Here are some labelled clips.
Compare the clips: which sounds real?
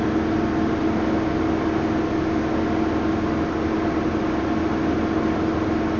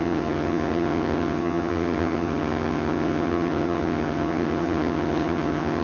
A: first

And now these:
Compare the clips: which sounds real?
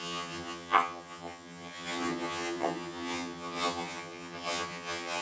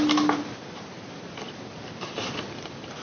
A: second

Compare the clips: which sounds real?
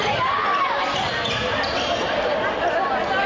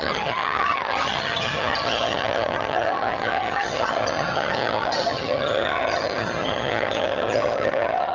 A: first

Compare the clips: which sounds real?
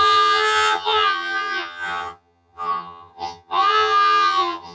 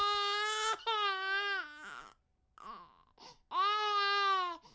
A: second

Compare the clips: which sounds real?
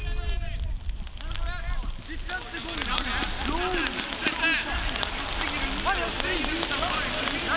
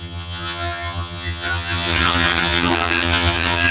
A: first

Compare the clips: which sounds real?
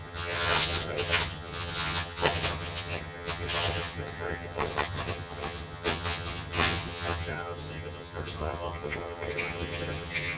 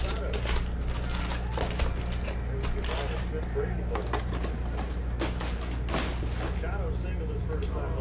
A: second